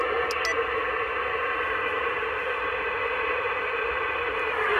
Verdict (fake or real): real